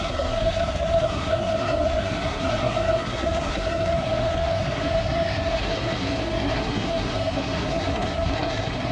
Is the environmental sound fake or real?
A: fake